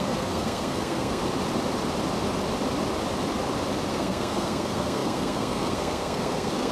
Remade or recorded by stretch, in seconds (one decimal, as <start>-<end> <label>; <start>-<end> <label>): 0.0-1.2 remade; 1.2-3.9 recorded; 3.9-6.7 remade